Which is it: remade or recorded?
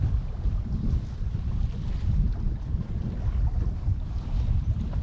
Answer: recorded